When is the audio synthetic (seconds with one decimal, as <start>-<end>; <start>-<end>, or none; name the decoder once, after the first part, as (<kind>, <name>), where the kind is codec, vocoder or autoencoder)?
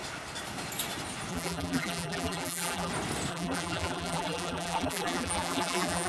1.3-2.9 (vocoder, BigVGAN v2); 3.3-6.1